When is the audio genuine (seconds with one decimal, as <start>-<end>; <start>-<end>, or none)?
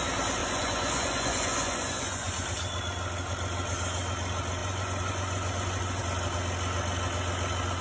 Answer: 0.0-0.4; 2.3-4.6; 6.0-7.8